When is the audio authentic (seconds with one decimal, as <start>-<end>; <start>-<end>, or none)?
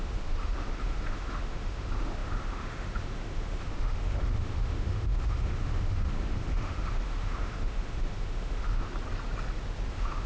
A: 8.9-9.9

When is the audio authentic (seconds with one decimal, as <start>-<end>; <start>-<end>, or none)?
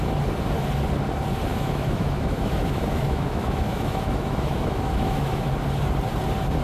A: 0.0-1.5; 5.5-6.6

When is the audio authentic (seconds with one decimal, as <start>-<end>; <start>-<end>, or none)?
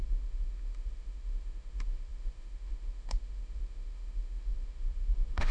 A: none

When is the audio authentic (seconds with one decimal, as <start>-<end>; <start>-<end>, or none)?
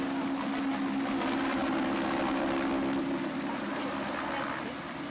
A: 0.0-5.1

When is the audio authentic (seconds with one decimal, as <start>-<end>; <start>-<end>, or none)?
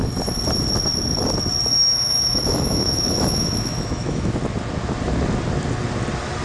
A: 0.0-1.7; 4.3-6.4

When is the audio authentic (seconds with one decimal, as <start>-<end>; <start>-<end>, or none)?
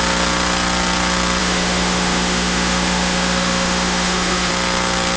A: 0.0-1.4; 4.5-5.2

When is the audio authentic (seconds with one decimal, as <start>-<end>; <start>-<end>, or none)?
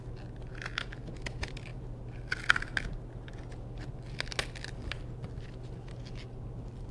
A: 0.0-6.9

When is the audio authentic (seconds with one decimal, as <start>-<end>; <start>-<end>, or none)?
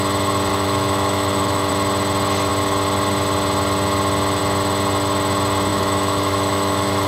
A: 0.0-0.5; 1.7-5.7